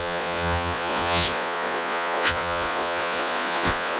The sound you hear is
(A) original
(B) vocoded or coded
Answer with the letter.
B